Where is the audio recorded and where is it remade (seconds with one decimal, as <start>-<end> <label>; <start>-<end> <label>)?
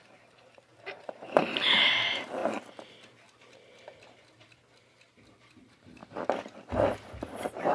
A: 0.0-2.4 remade; 2.4-5.6 recorded; 5.6-6.0 remade; 6.0-7.2 recorded; 7.2-7.7 remade